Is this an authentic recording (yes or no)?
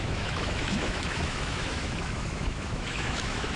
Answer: no